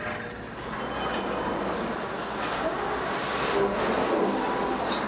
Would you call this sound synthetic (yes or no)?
no